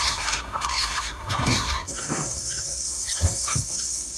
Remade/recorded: remade